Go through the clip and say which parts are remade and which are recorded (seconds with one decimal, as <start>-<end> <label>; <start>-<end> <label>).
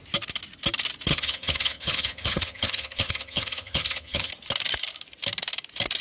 0.0-1.1 recorded; 1.1-4.3 remade; 4.3-6.0 recorded